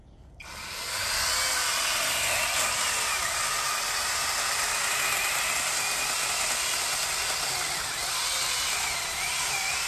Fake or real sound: real